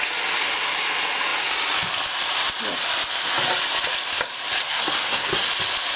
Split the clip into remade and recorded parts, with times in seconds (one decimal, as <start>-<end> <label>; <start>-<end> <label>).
0.0-4.6 recorded; 4.6-5.5 remade; 5.5-6.0 recorded